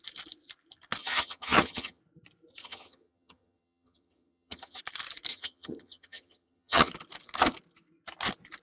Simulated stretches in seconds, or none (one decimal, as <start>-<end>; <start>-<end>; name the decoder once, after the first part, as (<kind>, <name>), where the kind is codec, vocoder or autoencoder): 1.0-2.0 (vocoder, HiFi-GAN); 2.6-4.8; 5.3-6.9